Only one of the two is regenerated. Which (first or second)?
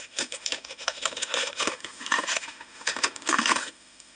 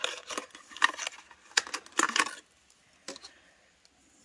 first